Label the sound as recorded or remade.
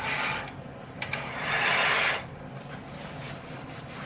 recorded